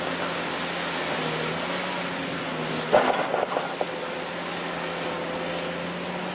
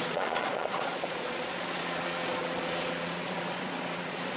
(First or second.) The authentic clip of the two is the first